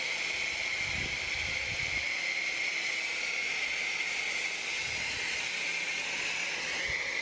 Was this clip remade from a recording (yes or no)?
no